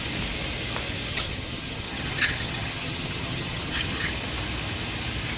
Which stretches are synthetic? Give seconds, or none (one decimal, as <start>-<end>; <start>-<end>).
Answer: 1.1-4.1